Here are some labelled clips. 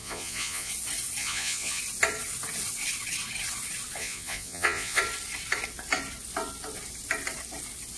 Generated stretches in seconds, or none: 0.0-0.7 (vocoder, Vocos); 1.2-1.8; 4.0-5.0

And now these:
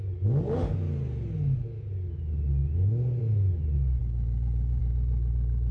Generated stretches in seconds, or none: none

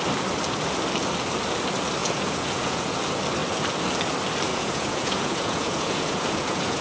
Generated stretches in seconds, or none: 2.0-2.9 (vocoder, Vocos); 4.5-6.8

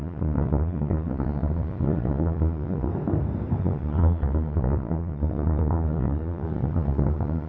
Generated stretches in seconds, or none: 0.0-2.9 (vocoder, Vocos); 3.6-7.5